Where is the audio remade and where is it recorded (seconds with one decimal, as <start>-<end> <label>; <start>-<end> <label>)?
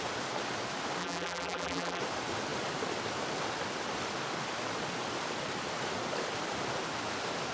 0.0-1.0 recorded; 1.0-2.0 remade; 2.0-7.5 recorded